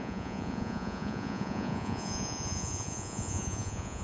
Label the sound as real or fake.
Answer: fake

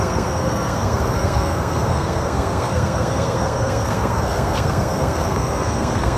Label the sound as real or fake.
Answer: fake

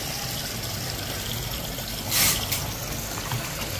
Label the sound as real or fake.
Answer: real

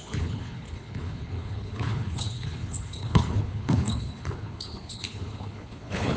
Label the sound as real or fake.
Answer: fake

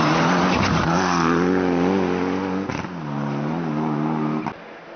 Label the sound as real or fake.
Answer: real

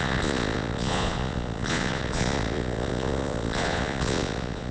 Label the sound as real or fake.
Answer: fake